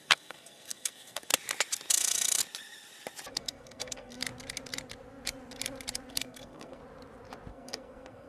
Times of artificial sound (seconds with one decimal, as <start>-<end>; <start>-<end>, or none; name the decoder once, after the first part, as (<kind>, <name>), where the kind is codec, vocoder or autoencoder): 0.0-1.3 (codec, SNAC); 1.9-2.4; 3.3-4.2; 6.1-6.8; 7.5-8.3